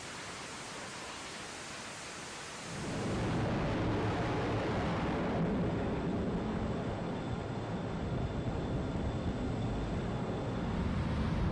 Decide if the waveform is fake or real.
real